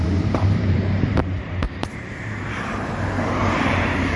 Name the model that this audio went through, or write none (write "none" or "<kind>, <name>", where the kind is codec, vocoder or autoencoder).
vocoder, BigVGAN v2